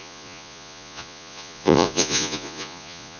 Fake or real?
fake